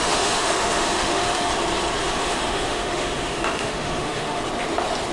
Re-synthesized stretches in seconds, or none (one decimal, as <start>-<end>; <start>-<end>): 0.0-1.5; 2.0-4.4